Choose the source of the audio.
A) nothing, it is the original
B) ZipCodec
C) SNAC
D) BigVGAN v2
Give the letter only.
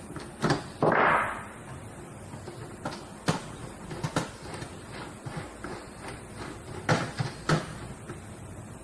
A